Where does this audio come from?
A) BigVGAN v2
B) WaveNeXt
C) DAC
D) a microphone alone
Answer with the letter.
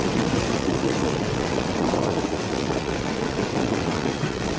B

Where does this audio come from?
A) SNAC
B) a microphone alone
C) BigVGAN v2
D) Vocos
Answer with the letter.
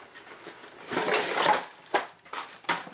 B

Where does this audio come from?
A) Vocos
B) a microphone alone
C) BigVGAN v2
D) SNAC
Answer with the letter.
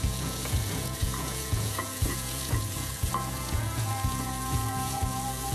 A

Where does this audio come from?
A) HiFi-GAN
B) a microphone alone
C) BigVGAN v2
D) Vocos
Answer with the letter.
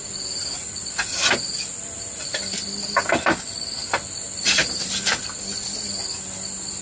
B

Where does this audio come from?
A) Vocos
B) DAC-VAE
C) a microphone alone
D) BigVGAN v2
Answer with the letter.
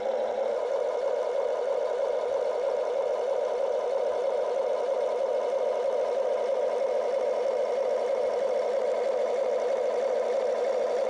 C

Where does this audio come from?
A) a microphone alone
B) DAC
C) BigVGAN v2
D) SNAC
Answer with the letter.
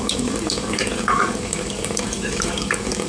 B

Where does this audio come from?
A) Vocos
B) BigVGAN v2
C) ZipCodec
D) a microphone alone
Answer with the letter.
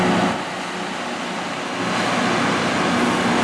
D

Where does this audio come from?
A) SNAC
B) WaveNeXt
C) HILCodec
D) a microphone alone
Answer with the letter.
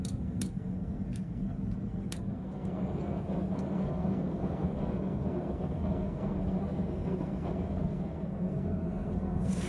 A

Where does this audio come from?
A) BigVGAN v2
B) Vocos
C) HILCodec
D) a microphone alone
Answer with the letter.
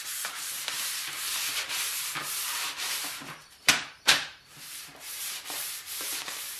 A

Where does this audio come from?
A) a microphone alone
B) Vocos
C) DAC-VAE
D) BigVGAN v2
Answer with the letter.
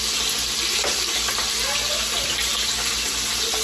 A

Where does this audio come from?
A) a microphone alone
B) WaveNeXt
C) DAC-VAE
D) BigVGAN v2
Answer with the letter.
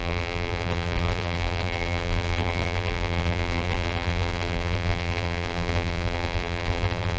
D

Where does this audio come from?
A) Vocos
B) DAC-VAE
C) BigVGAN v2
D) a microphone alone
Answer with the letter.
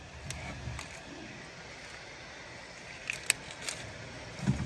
D